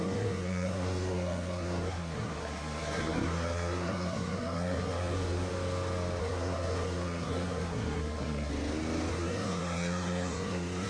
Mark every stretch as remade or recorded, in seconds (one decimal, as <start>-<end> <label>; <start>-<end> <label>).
0.0-5.5 remade; 5.5-6.2 recorded; 6.2-8.5 remade; 8.5-9.1 recorded; 9.1-10.9 remade